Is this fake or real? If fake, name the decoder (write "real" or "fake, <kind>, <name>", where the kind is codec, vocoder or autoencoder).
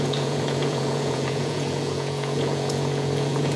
fake, vocoder, Vocos